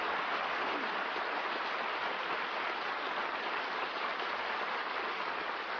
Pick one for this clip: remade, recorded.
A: recorded